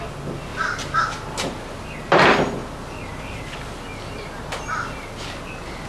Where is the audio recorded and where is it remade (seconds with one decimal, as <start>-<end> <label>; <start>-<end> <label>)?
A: 0.0-2.6 remade; 2.6-5.9 recorded